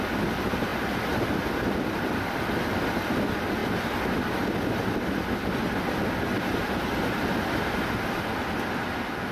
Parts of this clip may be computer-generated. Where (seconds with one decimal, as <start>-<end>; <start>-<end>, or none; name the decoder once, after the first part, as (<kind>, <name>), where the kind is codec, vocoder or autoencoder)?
none